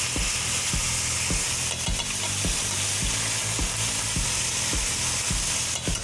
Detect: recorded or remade recorded